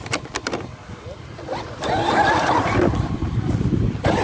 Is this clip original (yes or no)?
yes